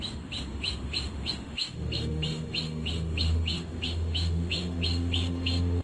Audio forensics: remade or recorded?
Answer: remade